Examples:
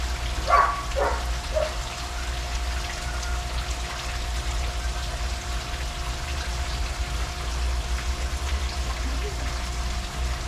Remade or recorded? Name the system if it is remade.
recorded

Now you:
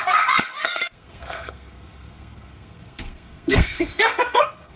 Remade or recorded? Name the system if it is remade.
remade, codec, SNAC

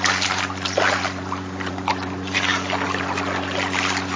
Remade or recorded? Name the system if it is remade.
remade, vocoder, Vocos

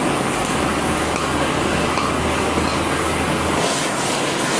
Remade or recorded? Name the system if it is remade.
remade, codec, DAC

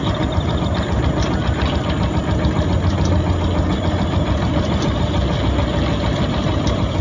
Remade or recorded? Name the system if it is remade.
recorded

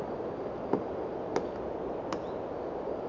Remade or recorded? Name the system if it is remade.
recorded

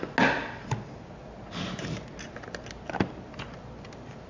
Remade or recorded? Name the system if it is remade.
recorded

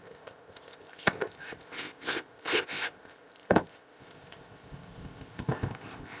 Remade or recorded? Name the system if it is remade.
remade, codec, ZipCodec